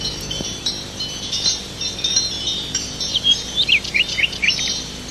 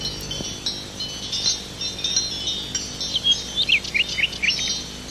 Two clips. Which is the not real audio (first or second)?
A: first